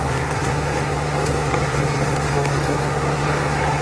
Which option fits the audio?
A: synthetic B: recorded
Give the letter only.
A